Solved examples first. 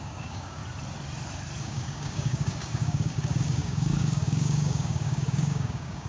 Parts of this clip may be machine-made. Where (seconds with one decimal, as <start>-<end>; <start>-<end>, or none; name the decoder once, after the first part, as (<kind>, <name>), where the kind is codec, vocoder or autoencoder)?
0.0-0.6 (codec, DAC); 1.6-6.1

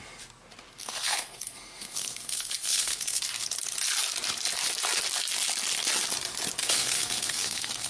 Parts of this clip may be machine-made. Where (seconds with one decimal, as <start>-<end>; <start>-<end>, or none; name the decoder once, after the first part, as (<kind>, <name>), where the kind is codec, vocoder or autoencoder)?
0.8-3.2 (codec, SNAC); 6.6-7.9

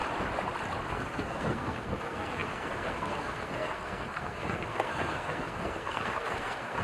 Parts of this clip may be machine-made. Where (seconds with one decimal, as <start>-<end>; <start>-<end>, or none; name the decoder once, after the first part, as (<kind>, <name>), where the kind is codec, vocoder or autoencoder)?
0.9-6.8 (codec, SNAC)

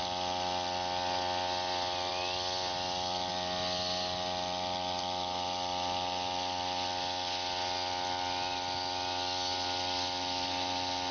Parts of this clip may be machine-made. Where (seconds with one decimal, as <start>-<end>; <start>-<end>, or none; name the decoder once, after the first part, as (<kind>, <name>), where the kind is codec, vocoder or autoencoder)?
none